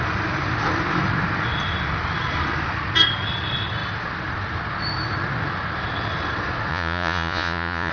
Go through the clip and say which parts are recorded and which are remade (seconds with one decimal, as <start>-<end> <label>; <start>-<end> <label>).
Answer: 0.0-6.7 recorded; 6.7-7.9 remade